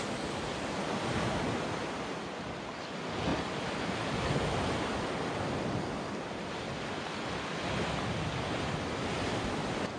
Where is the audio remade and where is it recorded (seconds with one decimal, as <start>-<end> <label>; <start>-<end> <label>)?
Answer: 0.0-10.0 recorded